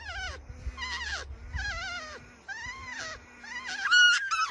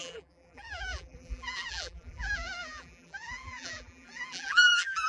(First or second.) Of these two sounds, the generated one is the second